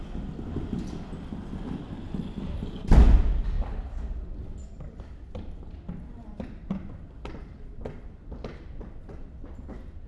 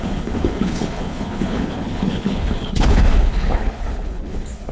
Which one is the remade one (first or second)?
second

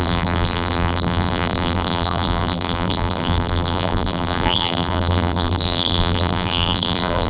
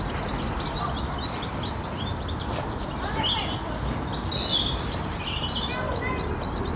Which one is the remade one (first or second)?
first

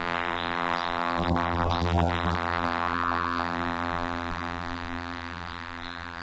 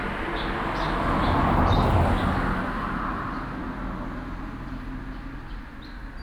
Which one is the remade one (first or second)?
first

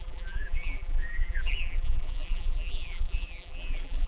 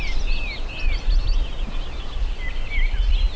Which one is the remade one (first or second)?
first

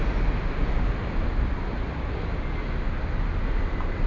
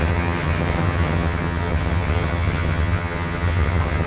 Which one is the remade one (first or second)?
second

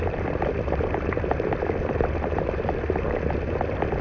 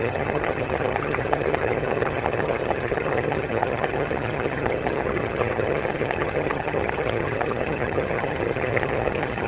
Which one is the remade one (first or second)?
second